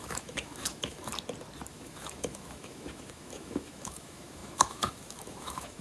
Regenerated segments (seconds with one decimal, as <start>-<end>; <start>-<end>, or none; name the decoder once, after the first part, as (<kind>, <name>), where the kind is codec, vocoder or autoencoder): 0.0-1.1 (autoencoder, DAC-VAE); 1.7-5.8